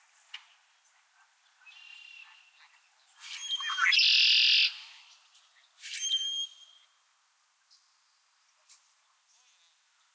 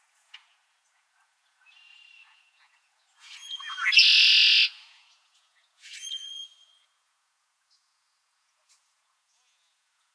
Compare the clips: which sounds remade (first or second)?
second